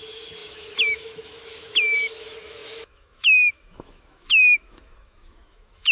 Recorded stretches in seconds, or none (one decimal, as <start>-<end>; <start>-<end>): none